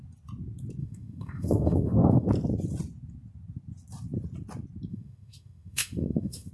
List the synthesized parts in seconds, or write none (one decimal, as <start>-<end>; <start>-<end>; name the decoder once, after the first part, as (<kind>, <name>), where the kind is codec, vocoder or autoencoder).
0.8-2.3 (autoencoder, DAC-VAE); 4.9-6.5